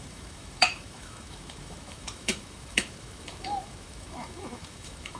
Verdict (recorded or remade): remade